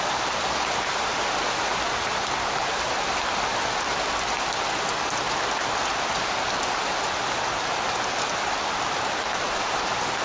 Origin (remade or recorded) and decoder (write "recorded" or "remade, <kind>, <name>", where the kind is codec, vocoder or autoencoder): recorded